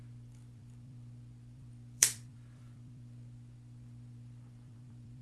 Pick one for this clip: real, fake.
fake